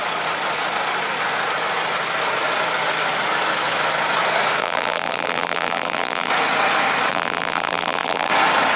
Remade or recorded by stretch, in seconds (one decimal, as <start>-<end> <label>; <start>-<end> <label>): 0.0-4.6 recorded; 4.6-6.3 remade; 6.3-7.1 recorded; 7.1-8.3 remade; 8.3-8.8 recorded